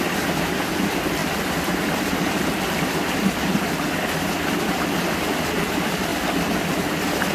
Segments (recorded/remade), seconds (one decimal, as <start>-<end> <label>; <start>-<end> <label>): 0.0-7.3 remade